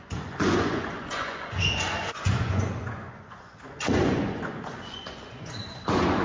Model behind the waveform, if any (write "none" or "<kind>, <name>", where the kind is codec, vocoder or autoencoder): vocoder, Vocos